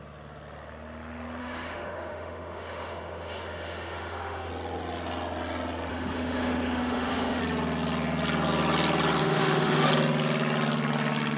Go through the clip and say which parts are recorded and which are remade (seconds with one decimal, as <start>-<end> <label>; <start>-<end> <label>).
0.0-1.4 recorded; 1.4-4.5 remade; 4.5-5.9 recorded; 5.9-7.4 remade; 7.4-9.2 recorded; 9.2-9.9 remade; 9.9-11.4 recorded